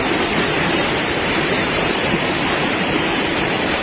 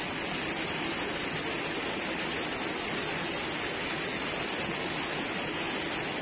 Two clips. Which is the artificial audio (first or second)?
first